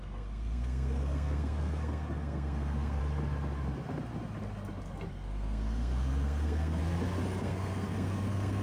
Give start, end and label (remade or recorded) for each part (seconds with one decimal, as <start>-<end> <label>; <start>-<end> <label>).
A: 0.0-3.0 remade; 3.0-5.1 recorded; 5.1-6.8 remade; 6.8-7.4 recorded; 7.4-8.6 remade